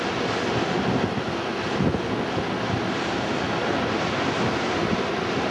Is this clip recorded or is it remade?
recorded